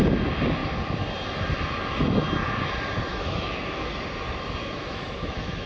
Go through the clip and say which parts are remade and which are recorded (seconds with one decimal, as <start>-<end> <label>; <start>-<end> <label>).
0.0-3.1 recorded; 3.1-3.9 remade; 3.9-4.6 recorded; 4.6-5.7 remade